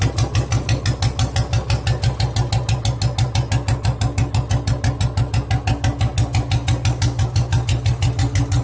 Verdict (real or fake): real